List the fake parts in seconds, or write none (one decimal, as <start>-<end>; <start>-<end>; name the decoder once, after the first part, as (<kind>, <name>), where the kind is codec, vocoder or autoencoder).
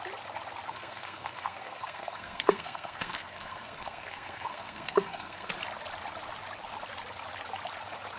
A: 0.7-5.5 (codec, SNAC)